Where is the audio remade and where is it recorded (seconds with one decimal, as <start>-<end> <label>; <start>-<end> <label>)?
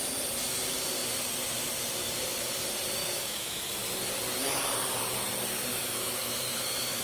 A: 0.0-3.0 recorded; 3.0-3.7 remade; 3.7-5.7 recorded; 5.7-7.0 remade